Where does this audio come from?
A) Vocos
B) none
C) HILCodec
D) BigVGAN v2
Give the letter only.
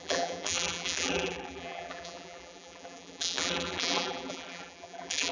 D